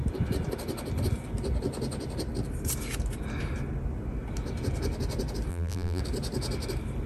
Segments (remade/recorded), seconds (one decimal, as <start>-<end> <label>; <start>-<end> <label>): 0.0-5.5 recorded; 5.5-6.0 remade; 6.0-7.1 recorded